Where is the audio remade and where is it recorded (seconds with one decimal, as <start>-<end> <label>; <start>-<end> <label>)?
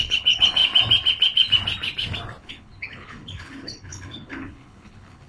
0.0-0.6 remade; 0.6-2.4 recorded; 2.4-5.3 remade